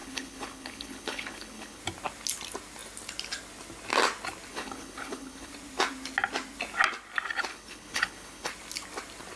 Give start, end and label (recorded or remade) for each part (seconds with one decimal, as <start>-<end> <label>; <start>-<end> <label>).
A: 0.0-1.8 remade; 1.8-4.5 recorded; 4.5-5.5 remade; 5.5-7.5 recorded; 7.5-8.5 remade; 8.5-9.4 recorded